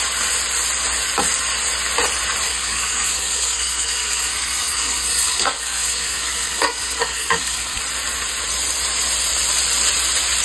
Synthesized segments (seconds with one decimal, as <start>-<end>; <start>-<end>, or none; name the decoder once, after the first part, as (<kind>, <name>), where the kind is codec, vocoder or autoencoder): 2.5-7.8 (codec, SNAC)